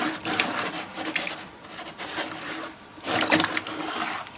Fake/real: real